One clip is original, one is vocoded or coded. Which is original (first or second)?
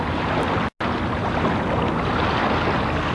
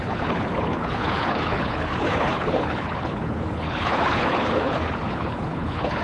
first